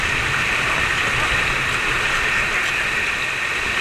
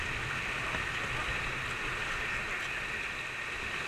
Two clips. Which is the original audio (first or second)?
second